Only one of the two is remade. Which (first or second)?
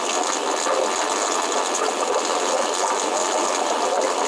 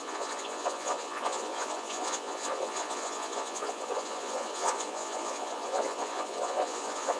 second